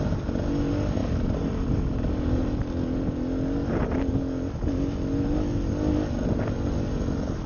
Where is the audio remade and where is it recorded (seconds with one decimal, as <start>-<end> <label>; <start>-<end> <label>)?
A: 0.0-7.5 recorded